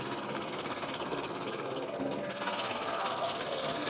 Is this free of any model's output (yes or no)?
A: no